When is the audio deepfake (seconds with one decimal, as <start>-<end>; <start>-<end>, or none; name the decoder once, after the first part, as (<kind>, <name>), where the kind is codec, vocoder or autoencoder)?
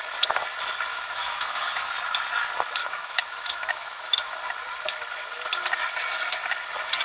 0.9-1.9 (autoencoder, DAC-VAE); 2.8-4.4